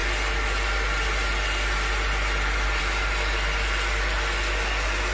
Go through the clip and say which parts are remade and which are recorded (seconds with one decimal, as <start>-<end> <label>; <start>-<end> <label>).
0.0-5.1 remade